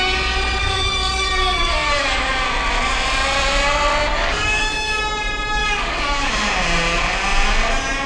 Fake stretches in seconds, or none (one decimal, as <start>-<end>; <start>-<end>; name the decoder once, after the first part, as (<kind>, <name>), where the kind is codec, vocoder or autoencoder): 0.6-2.3 (codec, DAC); 4.1-5.0; 5.6-6.3